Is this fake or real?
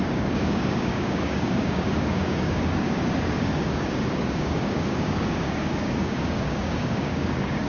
fake